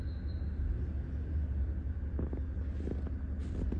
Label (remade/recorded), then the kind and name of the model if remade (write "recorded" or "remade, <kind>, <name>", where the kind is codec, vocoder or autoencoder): recorded